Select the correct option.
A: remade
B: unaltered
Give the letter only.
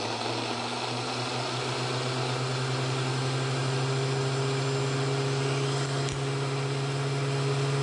B